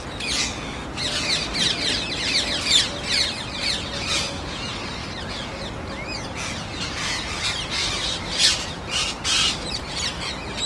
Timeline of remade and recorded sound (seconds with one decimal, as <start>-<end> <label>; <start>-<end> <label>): 0.0-5.0 recorded; 5.0-5.6 remade; 5.6-7.8 recorded; 7.8-10.1 remade; 10.1-10.7 recorded